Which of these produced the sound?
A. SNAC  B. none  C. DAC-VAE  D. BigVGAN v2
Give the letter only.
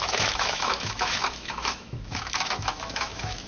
C